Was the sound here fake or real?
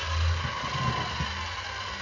real